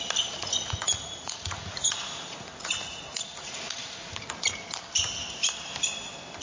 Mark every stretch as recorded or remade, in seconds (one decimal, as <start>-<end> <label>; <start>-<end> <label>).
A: 0.0-0.4 recorded; 0.4-4.2 remade; 4.2-6.4 recorded